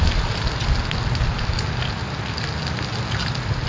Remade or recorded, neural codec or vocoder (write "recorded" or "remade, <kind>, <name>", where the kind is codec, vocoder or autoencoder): recorded